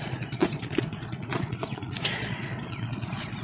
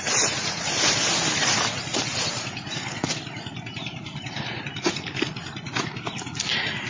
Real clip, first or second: second